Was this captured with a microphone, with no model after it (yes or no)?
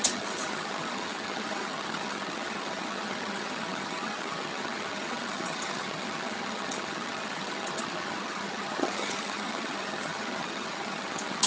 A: no